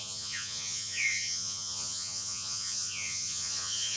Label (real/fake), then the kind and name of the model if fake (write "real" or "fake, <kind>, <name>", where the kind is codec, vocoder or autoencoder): fake, vocoder, Vocos